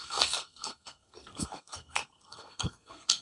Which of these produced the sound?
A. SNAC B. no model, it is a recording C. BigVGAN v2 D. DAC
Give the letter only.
A